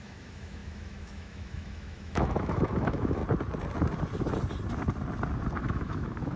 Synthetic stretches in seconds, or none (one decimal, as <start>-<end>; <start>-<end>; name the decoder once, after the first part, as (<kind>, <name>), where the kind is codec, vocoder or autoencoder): 0.0-3.2 (autoencoder, DAC-VAE); 5.6-6.4